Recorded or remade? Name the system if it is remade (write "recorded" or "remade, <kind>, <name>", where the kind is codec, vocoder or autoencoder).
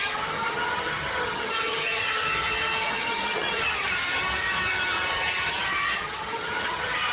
remade, vocoder, HiFi-GAN